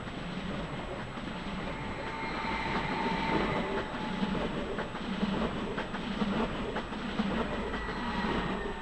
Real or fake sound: real